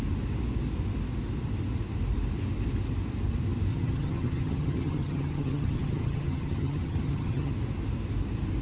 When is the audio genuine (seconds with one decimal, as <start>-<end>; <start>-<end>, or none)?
0.0-3.7; 7.5-8.6